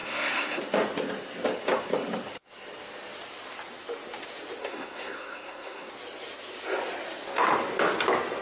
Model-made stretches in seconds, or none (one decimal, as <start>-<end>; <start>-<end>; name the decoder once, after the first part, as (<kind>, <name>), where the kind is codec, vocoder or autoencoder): 0.0-0.6 (codec, SNAC); 4.6-5.9